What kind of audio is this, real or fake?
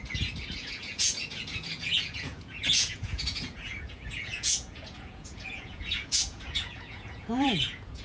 fake